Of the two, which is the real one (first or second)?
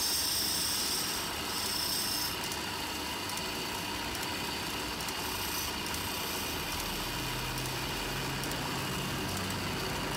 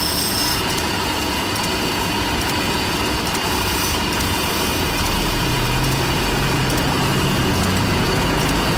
first